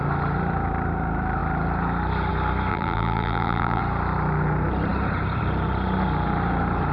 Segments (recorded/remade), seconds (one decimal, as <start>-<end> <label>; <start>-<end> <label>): 0.0-2.7 recorded; 2.7-3.8 remade; 3.8-6.9 recorded

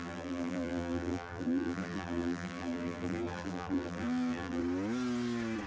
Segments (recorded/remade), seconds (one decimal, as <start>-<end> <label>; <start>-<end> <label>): 0.0-4.6 remade; 4.6-5.7 recorded

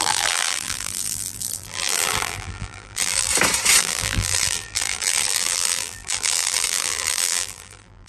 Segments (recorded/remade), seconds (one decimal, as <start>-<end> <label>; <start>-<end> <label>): 0.0-3.3 remade; 3.3-3.8 recorded; 3.8-8.1 remade